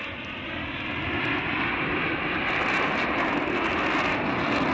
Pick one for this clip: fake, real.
real